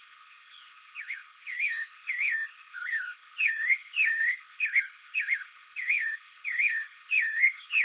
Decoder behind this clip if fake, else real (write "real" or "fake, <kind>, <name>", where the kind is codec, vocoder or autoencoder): fake, codec, HILCodec